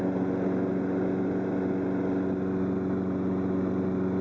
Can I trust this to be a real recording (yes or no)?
yes